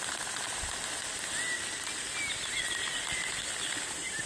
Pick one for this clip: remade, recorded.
recorded